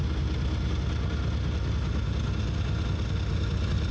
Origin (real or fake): real